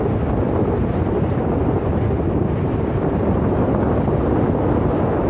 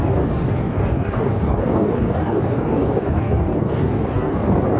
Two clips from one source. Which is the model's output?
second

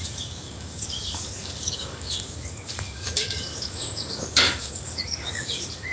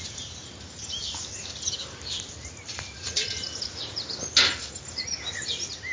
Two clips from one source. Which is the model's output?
first